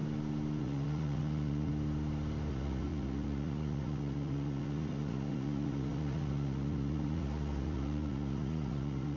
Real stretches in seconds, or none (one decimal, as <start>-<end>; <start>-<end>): 0.0-0.6; 1.7-2.5